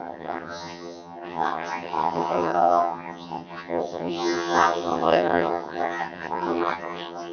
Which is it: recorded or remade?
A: remade